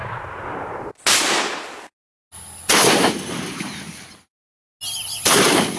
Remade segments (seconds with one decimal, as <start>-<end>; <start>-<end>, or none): none